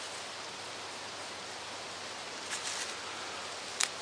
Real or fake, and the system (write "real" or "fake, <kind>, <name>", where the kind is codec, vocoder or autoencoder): real